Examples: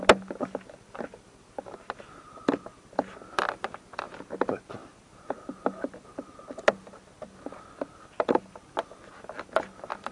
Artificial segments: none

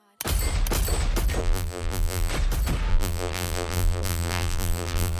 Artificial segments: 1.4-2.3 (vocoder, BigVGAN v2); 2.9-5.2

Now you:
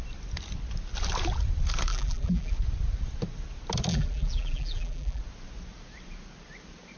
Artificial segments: 1.9-2.5 (vocoder, BigVGAN v2); 3.9-5.2

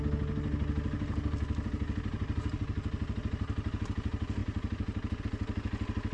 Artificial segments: 4.4-5.2 (vocoder, BigVGAN v2)